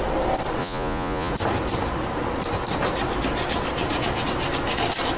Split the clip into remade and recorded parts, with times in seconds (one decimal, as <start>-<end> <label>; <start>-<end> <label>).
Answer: 0.0-0.6 recorded; 0.6-1.3 remade; 1.3-5.2 recorded